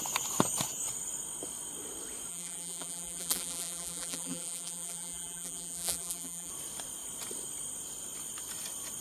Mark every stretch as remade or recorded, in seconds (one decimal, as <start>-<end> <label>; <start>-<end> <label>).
0.0-2.3 recorded; 2.3-6.5 remade; 6.5-9.0 recorded